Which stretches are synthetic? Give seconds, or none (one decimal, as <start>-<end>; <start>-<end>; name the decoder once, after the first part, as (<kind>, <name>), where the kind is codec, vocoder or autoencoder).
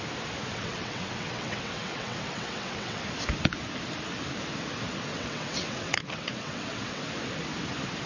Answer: 0.5-3.0 (vocoder, WaveNeXt); 5.1-7.0